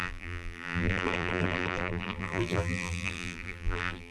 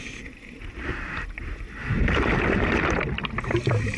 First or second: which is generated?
first